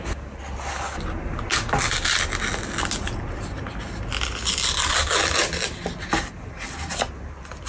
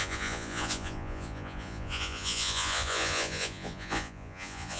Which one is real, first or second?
first